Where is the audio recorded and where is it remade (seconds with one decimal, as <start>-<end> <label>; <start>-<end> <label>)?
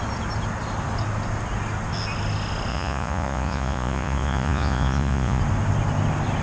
0.0-2.7 recorded; 2.7-5.4 remade; 5.4-6.4 recorded